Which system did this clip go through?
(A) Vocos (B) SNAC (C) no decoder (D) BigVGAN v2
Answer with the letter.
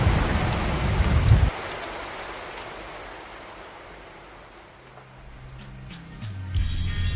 C